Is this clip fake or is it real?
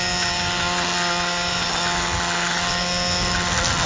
real